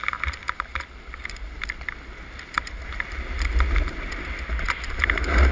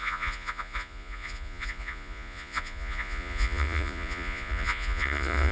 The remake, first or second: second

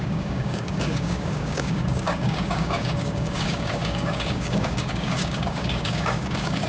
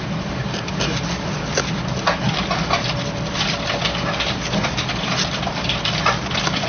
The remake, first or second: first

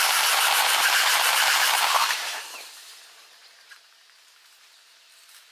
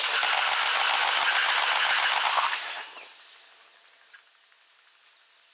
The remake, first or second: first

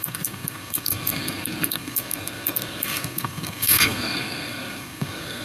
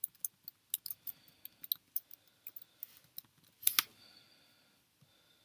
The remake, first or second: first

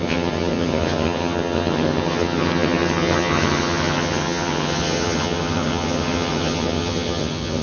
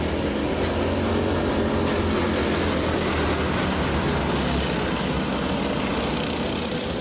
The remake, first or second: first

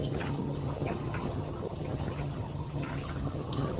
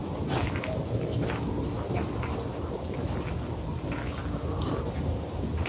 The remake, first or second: first